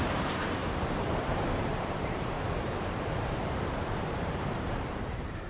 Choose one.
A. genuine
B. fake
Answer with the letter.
B